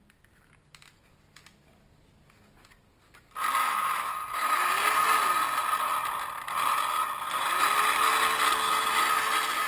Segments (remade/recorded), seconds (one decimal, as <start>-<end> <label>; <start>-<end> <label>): 0.0-3.6 recorded; 3.6-4.7 remade; 4.7-9.7 recorded